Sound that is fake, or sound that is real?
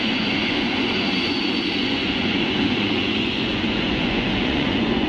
fake